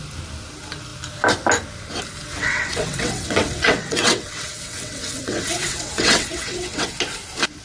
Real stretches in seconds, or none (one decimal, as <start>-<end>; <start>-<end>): 0.0-2.4; 7.0-7.6